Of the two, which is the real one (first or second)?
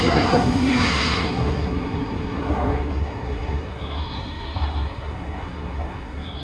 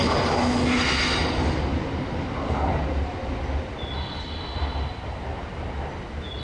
second